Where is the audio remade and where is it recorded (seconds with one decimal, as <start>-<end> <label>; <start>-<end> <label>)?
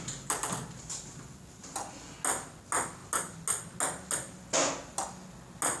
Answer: 0.0-5.8 recorded